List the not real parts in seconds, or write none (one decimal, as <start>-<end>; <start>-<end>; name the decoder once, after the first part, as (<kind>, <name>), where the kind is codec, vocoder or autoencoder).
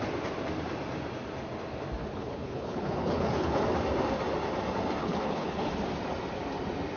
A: 2.0-3.6 (codec, HILCodec); 5.0-5.7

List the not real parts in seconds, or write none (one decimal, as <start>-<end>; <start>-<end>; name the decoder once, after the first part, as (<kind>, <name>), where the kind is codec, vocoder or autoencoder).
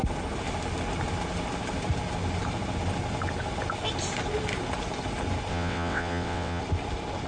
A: 5.5-6.6 (vocoder, WaveNeXt)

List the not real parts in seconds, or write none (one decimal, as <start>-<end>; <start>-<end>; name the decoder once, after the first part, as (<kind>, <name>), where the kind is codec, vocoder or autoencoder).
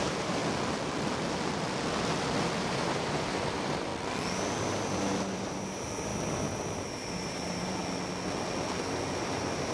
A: 0.0-0.4 (vocoder, BigVGAN v2); 2.6-3.9; 4.6-6.1; 7.1-7.8; 9.2-9.7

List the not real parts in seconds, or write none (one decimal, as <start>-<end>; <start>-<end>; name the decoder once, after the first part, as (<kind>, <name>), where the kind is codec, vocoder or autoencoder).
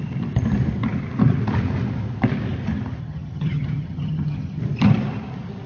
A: 3.0-4.6 (vocoder, HiFi-GAN)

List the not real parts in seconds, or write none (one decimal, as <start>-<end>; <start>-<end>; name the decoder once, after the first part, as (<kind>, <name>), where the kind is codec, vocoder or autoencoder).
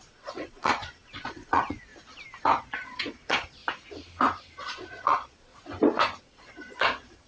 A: 0.0-1.9 (vocoder, Vocos); 2.6-3.6; 4.5-5.5; 6.2-7.3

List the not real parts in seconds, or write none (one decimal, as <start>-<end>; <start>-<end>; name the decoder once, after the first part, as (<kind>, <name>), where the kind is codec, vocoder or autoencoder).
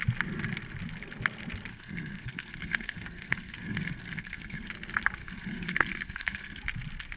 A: 1.7-4.7 (codec, SNAC); 5.2-6.6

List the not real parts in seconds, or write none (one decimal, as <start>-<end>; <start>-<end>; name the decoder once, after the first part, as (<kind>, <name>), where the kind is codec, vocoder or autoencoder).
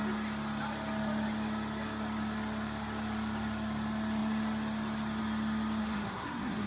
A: 5.8-6.7 (codec, SNAC)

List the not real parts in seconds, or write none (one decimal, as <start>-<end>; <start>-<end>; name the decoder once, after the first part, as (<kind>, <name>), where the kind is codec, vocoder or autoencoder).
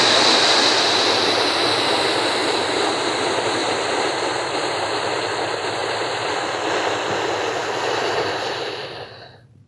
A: 2.4-3.1 (vocoder, BigVGAN v2); 3.6-4.2; 5.8-6.3